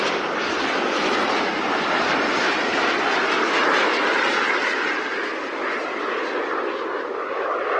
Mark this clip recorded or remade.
recorded